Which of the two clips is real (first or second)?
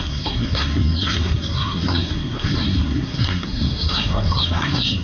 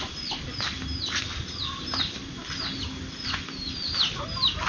second